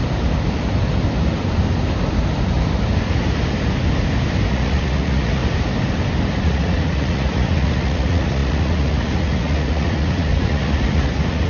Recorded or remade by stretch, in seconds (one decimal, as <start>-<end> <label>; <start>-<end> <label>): 0.0-4.5 recorded; 4.5-5.4 remade; 5.4-6.4 recorded; 6.4-11.5 remade